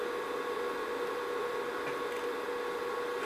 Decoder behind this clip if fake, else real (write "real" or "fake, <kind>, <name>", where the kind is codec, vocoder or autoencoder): real